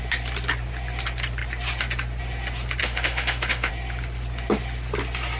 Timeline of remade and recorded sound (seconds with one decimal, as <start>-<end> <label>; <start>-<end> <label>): 0.0-2.8 recorded; 2.8-3.7 remade; 3.7-5.4 recorded